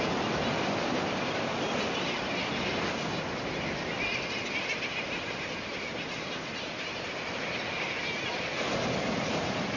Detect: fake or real real